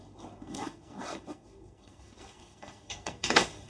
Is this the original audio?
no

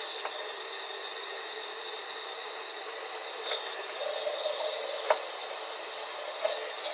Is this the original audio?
yes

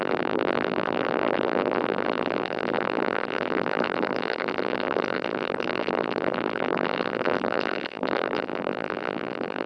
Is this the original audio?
no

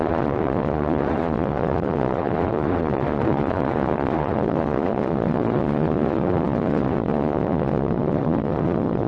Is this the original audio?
no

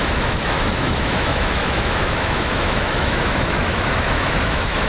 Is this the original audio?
no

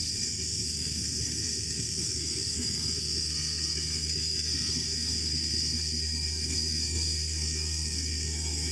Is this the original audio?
no